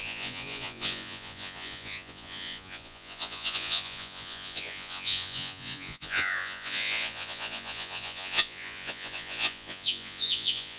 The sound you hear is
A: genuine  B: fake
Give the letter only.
B